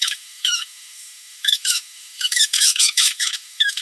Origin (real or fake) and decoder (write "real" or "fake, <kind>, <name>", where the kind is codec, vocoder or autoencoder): fake, autoencoder, DAC-VAE